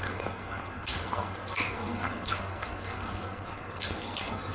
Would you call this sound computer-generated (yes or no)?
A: yes